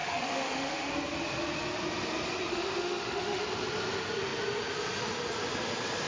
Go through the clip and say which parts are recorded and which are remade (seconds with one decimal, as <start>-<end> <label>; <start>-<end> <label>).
0.0-0.9 remade; 0.9-2.5 recorded; 2.5-3.4 remade; 3.4-6.1 recorded